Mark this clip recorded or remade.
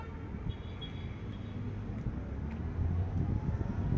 recorded